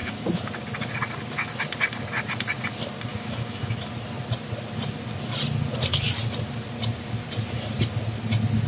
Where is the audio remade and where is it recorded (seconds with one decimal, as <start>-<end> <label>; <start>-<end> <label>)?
0.0-0.5 remade; 0.5-3.1 recorded; 3.1-3.7 remade; 3.7-8.7 recorded